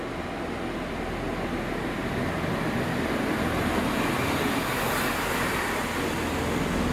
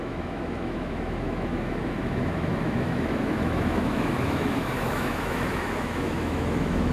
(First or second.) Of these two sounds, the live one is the first